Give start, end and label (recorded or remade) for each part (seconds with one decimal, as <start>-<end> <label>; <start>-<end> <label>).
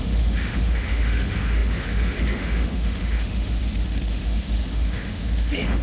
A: 0.0-5.8 remade